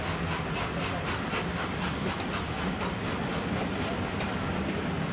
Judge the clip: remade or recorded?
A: recorded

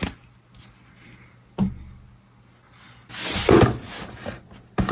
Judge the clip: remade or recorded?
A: recorded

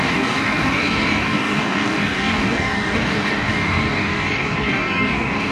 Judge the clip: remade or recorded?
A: remade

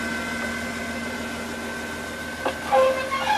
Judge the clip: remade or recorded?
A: recorded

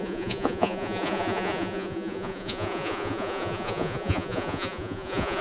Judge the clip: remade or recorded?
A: remade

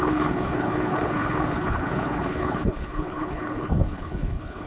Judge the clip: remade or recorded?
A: remade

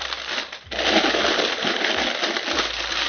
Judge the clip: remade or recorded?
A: remade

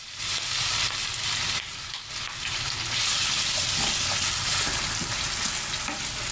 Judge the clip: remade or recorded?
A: recorded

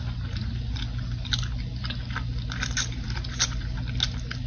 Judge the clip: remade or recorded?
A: recorded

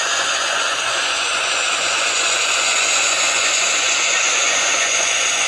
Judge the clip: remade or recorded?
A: remade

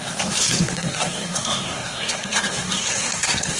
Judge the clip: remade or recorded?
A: remade